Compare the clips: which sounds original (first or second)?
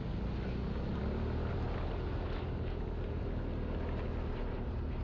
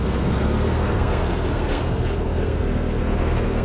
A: first